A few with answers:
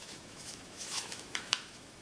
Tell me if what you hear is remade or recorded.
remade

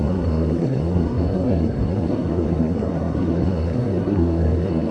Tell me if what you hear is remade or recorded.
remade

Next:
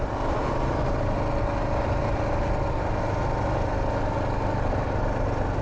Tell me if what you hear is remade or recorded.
recorded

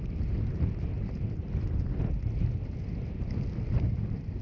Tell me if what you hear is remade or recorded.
recorded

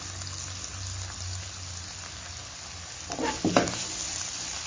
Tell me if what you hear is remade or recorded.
recorded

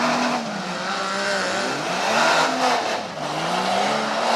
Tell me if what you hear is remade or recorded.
recorded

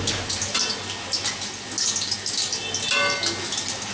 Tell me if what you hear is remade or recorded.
recorded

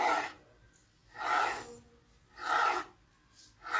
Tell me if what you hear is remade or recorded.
recorded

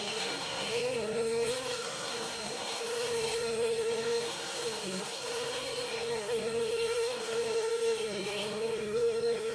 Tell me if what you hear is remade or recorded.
remade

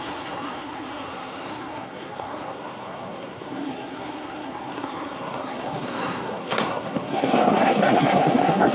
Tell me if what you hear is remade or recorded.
remade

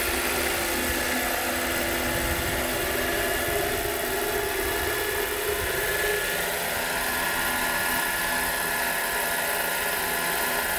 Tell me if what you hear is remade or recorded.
recorded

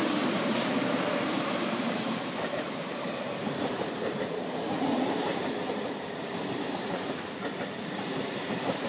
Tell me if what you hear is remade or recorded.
remade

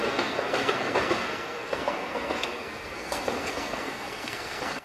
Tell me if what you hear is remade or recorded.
remade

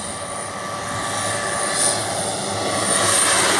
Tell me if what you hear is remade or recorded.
recorded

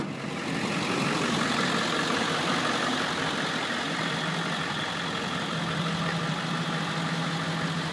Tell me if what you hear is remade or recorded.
recorded